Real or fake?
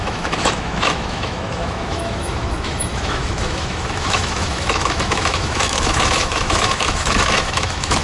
fake